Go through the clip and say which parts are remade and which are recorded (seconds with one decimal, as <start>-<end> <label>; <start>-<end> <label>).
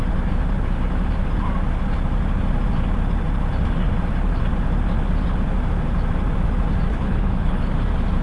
0.0-6.9 recorded; 6.9-7.7 remade; 7.7-8.2 recorded